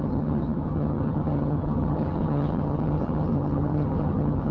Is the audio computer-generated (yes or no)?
yes